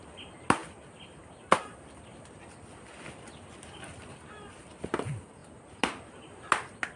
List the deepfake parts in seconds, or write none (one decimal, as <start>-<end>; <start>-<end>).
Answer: none